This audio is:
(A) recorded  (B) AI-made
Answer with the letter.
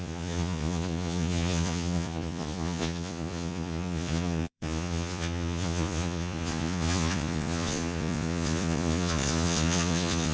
B